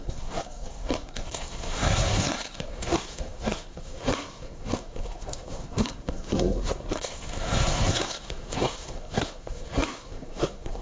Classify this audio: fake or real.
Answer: fake